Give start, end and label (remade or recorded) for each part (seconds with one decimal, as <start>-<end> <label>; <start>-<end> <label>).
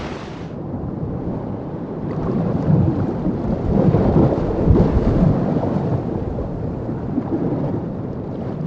0.0-4.9 remade; 4.9-8.7 recorded